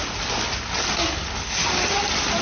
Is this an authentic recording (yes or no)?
yes